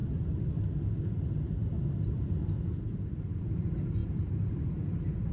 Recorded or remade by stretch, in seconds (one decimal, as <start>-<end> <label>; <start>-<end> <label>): 0.0-5.3 remade

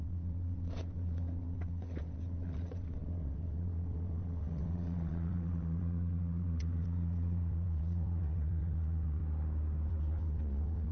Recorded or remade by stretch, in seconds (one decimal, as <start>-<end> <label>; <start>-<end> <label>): 0.0-9.2 remade; 9.2-9.9 recorded; 9.9-10.9 remade